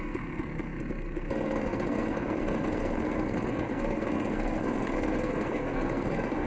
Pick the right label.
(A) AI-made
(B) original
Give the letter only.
A